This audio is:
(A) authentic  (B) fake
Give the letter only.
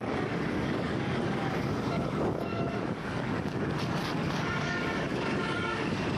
B